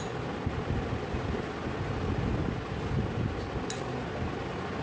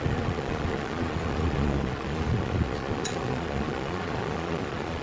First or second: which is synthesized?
second